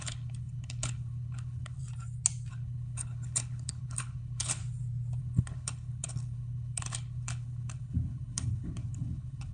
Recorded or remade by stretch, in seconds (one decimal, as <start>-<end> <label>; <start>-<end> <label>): 0.0-1.8 remade; 1.8-2.5 recorded; 2.5-4.6 remade; 4.6-5.2 recorded; 5.2-9.5 remade